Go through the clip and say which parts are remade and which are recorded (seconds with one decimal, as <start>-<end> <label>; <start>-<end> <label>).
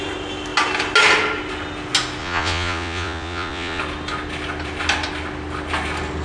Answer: 0.0-2.2 recorded; 2.2-3.8 remade; 3.8-6.2 recorded